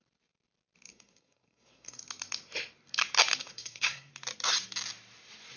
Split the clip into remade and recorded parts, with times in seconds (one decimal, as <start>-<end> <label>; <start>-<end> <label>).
0.0-0.9 recorded; 0.9-2.0 remade; 2.0-3.4 recorded; 3.4-4.1 remade; 4.1-5.6 recorded